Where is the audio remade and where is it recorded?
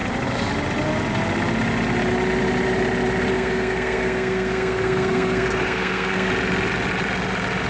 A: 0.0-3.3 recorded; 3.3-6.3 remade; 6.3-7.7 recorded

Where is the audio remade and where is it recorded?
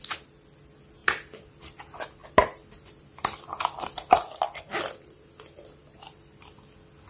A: 0.0-1.0 recorded; 1.0-1.6 remade; 1.6-2.2 recorded; 2.2-6.5 remade; 6.5-7.1 recorded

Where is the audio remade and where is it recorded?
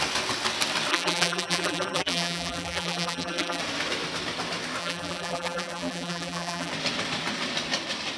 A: 0.0-0.9 recorded; 0.9-3.6 remade; 3.6-4.8 recorded; 4.8-6.7 remade; 6.7-8.2 recorded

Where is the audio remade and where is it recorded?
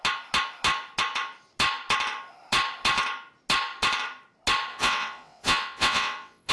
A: 0.0-4.7 recorded; 4.7-6.5 remade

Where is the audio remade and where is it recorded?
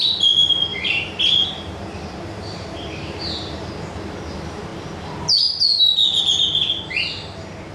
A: 0.0-0.7 recorded; 0.7-3.7 remade; 3.7-7.7 recorded